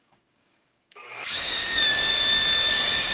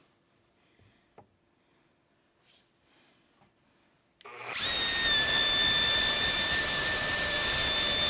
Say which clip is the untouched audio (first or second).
second